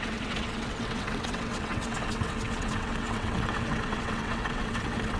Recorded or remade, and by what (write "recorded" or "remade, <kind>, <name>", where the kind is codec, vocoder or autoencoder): remade, vocoder, WaveNeXt